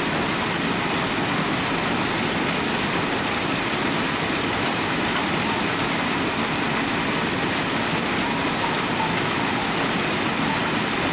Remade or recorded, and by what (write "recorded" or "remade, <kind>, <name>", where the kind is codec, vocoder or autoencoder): recorded